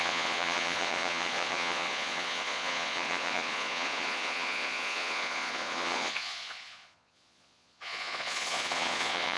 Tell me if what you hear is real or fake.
fake